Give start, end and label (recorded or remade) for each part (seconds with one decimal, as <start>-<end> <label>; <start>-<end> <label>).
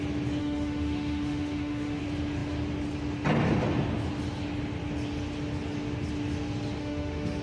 0.0-0.4 recorded; 0.4-2.0 remade; 2.0-6.8 recorded; 6.8-7.4 remade